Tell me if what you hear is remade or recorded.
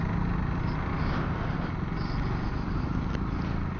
recorded